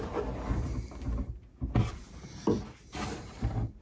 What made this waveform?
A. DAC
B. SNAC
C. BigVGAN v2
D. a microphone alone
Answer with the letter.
D